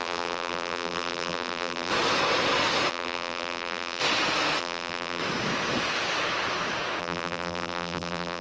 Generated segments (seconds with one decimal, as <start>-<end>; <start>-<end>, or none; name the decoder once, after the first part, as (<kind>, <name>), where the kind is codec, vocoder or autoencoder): 0.0-1.9 (vocoder, BigVGAN v2); 2.9-4.0; 4.6-5.2; 7.0-8.4